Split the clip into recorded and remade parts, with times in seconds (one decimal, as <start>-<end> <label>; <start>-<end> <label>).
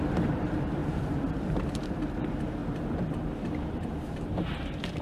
0.0-2.6 remade; 2.6-3.4 recorded; 3.4-5.0 remade